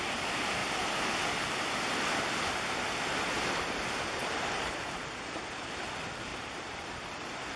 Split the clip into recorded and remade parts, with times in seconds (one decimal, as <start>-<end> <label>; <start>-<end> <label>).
0.0-0.6 recorded; 0.6-1.1 remade; 1.1-4.2 recorded; 4.2-5.4 remade; 5.4-6.3 recorded; 6.3-7.0 remade; 7.0-7.6 recorded